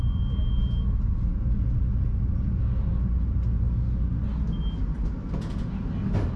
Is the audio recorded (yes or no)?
yes